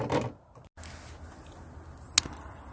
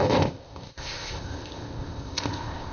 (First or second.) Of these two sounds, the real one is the first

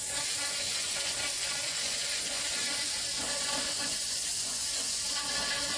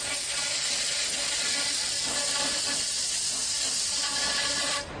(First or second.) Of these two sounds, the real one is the second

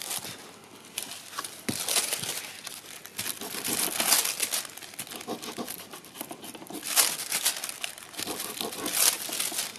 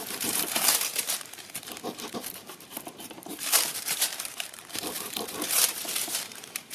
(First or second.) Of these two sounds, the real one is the first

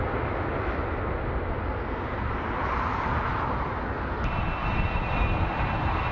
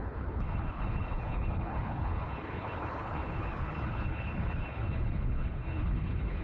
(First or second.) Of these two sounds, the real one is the first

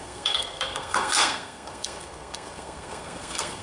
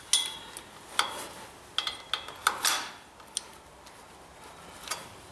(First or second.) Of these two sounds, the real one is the second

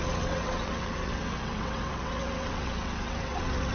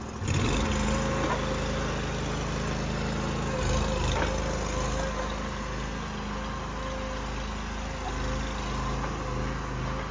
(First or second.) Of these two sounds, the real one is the second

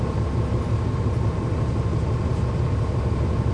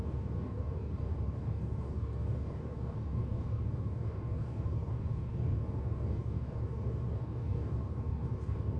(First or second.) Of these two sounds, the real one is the first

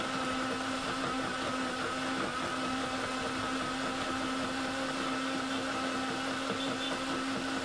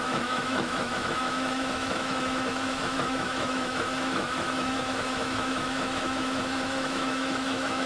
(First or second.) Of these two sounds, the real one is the first